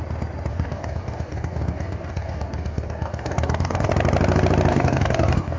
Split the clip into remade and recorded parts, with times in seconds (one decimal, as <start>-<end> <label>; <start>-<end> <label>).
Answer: 0.0-0.5 recorded; 0.5-3.9 remade; 3.9-4.7 recorded; 4.7-5.6 remade

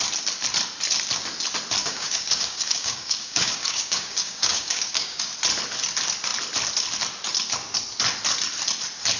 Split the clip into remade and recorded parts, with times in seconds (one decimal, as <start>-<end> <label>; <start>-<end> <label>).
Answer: 0.0-1.8 recorded; 1.8-5.2 remade; 5.2-9.2 recorded